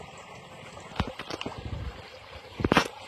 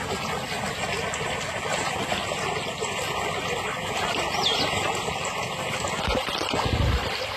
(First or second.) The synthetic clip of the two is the first